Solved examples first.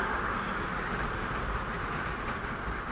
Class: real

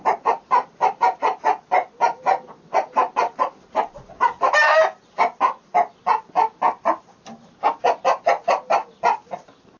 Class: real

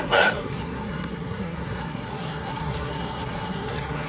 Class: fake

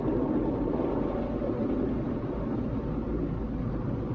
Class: real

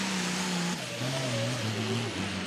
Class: real